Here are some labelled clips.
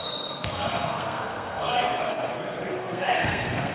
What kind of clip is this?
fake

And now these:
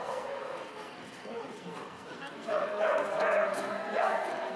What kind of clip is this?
fake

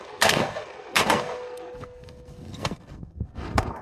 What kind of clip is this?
fake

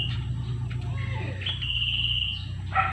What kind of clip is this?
real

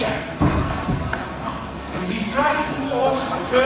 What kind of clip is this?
fake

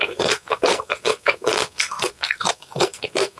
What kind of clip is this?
fake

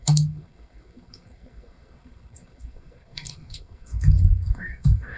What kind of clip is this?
fake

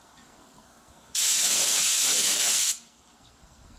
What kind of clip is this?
fake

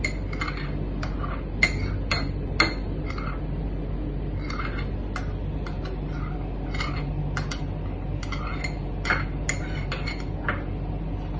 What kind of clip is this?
real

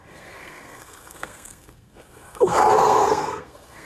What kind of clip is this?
fake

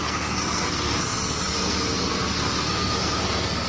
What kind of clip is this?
fake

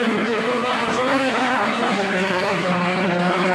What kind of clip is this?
fake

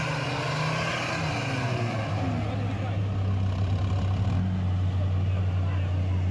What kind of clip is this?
real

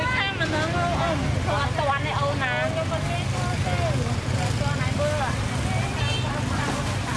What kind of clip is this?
real